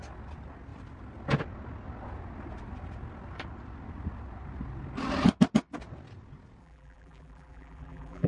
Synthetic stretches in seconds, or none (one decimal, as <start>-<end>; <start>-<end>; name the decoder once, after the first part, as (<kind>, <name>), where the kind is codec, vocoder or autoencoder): 6.6-8.3 (vocoder, BigVGAN v2)